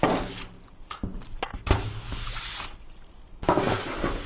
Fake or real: real